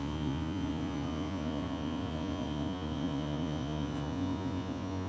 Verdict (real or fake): fake